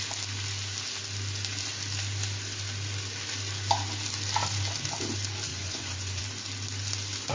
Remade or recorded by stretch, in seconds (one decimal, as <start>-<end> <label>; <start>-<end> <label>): 0.0-5.5 recorded; 5.5-6.2 remade; 6.2-7.3 recorded